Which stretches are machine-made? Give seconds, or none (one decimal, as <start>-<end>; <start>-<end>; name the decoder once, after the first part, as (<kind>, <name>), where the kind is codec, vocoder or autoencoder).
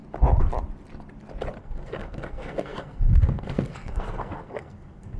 1.6-5.2 (codec, SNAC)